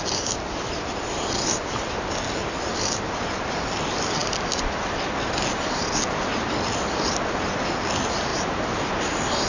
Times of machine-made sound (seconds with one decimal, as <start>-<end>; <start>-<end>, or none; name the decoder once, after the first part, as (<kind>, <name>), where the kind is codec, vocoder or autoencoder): 8.3-8.9 (vocoder, BigVGAN v2)